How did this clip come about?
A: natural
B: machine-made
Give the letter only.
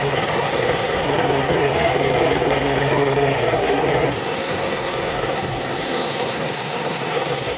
B